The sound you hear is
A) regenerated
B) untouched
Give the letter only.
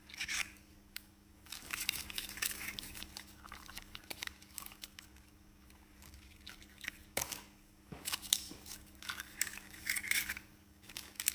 A